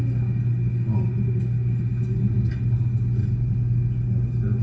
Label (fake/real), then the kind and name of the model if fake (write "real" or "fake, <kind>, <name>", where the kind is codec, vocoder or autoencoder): real